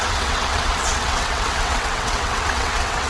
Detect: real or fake fake